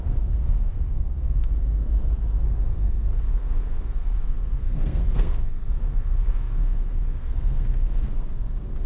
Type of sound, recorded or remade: remade